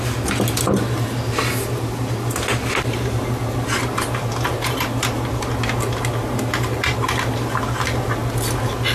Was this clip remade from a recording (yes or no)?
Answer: no